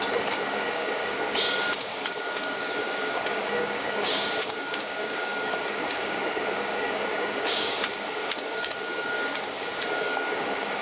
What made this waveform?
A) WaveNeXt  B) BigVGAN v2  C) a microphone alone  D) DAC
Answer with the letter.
D